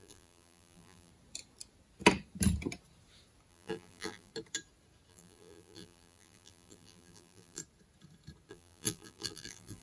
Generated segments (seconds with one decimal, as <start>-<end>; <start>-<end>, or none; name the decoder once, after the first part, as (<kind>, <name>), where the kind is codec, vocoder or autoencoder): 0.0-1.1 (vocoder, BigVGAN v2); 3.5-4.3; 5.1-7.6; 8.5-9.8